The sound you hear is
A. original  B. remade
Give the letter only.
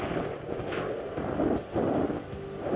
A